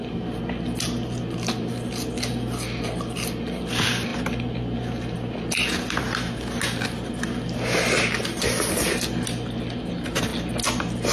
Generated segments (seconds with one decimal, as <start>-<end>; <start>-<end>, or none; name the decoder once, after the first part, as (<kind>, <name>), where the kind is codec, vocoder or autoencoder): none